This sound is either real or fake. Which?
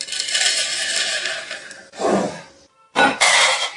real